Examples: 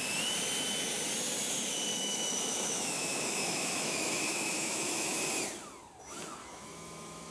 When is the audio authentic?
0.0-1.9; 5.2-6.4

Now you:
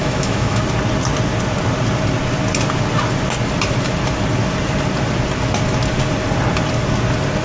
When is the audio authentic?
0.6-7.4

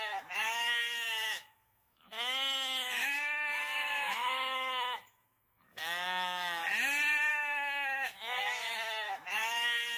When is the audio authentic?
6.6-7.3

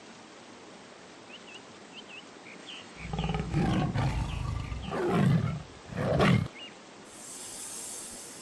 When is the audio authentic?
0.0-2.6; 3.6-8.4

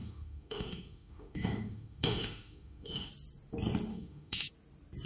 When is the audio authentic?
3.1-3.9; 4.5-5.1

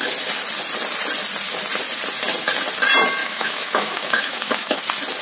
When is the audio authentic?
0.0-3.2; 4.8-5.2